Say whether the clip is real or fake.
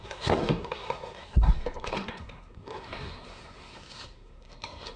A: fake